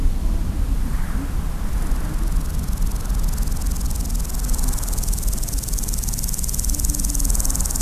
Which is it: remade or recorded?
recorded